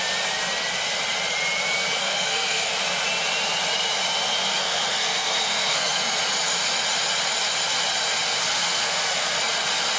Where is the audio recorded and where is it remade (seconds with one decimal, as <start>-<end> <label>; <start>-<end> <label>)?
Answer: 0.0-2.0 recorded; 2.0-2.7 remade; 2.7-4.5 recorded; 4.5-6.0 remade; 6.0-8.4 recorded; 8.4-9.4 remade; 9.4-10.0 recorded